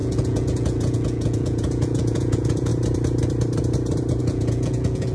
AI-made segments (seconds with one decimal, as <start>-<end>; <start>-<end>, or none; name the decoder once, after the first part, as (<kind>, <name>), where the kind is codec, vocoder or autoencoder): 0.0-2.7 (vocoder, Vocos); 4.2-5.1